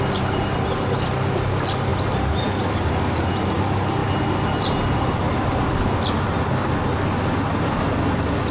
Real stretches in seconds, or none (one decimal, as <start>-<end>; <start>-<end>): 0.0-8.5